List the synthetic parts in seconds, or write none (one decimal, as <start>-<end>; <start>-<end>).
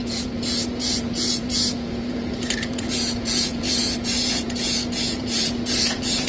0.0-6.3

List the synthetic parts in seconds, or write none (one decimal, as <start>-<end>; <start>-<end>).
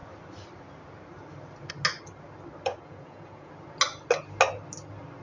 2.7-3.5